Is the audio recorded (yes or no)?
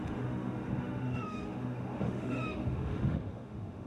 no